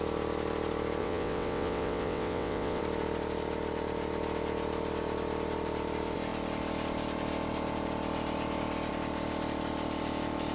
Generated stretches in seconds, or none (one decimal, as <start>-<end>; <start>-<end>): 1.0-2.8